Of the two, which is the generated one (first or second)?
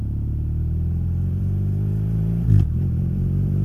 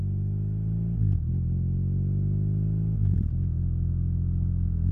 first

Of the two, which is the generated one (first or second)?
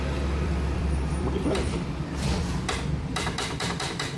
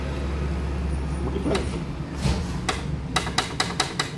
first